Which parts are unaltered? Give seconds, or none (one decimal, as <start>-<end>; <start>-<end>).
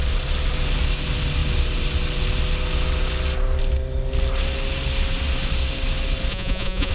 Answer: 0.0-6.3